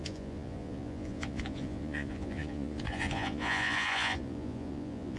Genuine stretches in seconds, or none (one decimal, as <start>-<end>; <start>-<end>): none